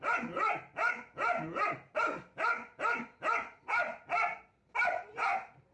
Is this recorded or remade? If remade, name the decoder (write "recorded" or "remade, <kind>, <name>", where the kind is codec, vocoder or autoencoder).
recorded